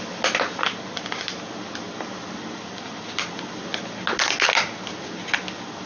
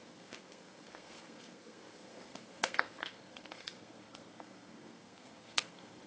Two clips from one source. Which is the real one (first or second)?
first